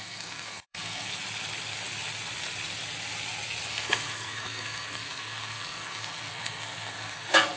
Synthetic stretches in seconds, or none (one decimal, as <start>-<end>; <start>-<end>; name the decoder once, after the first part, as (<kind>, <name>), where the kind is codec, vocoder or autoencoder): 0.0-1.1 (codec, SNAC); 3.7-7.6